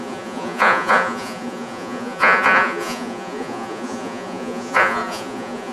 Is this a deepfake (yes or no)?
yes